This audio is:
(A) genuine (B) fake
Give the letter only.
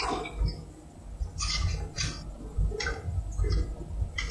A